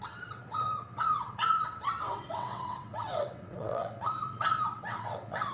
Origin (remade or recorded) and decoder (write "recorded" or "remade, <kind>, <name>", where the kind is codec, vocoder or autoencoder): remade, vocoder, WaveNeXt